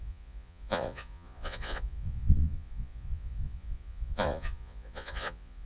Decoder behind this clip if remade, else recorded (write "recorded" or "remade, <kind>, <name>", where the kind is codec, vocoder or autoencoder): remade, vocoder, Vocos